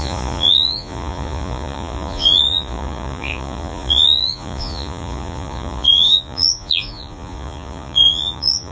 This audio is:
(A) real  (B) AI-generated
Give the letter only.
B